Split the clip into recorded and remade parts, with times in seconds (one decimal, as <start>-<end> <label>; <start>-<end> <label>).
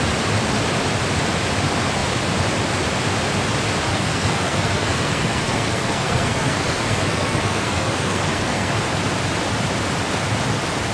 0.0-3.9 recorded; 3.9-8.7 remade; 8.7-10.9 recorded